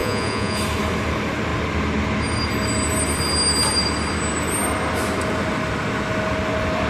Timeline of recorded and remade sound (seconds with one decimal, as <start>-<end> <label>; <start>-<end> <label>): 0.0-0.6 remade; 0.6-6.9 recorded